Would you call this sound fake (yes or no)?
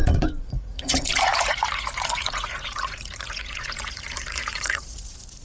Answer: yes